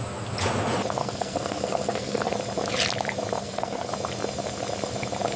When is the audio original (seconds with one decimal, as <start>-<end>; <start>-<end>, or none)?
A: 0.0-1.0; 2.3-3.4; 3.9-5.4